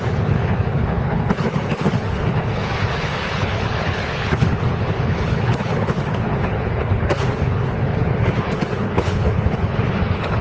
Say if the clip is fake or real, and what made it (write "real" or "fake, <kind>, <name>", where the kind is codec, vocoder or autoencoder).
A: fake, codec, HILCodec